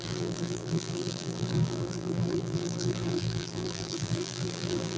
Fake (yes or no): yes